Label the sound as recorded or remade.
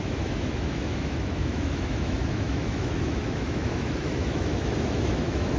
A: remade